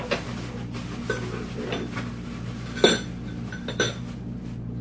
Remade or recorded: recorded